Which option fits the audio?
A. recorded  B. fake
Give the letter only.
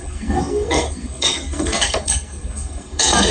B